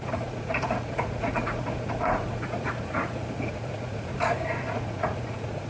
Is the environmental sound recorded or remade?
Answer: remade